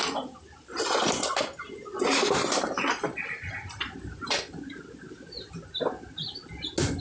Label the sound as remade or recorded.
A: recorded